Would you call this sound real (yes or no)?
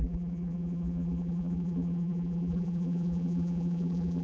no